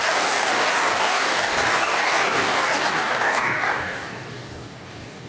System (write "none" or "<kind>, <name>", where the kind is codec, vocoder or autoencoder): codec, DAC